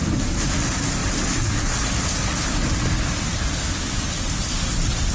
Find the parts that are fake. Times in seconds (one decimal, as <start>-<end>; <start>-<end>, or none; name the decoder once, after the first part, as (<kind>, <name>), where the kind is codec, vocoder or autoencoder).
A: none